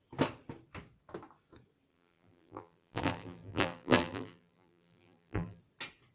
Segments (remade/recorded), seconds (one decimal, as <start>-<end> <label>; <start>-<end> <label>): 0.0-1.9 recorded; 1.9-5.6 remade; 5.6-6.1 recorded